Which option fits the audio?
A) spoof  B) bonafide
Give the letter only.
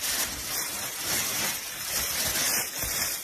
B